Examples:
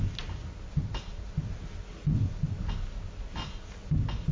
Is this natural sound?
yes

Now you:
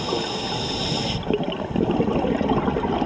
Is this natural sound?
yes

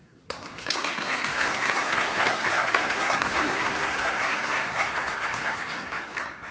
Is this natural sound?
no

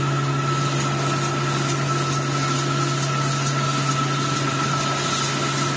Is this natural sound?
yes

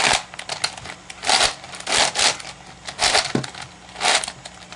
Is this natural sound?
yes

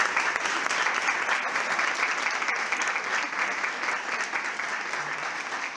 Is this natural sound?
yes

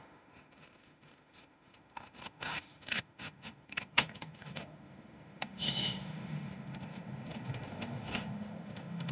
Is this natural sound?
no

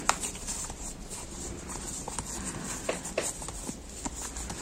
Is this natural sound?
yes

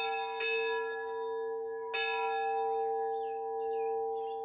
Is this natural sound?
yes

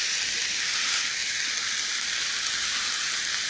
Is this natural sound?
yes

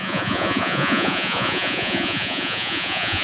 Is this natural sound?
no